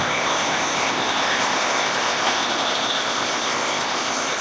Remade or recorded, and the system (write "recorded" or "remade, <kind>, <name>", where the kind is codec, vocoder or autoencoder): remade, codec, ZipCodec